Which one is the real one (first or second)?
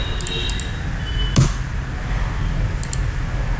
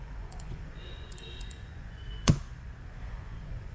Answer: first